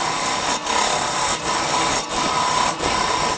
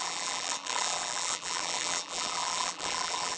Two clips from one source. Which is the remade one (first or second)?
second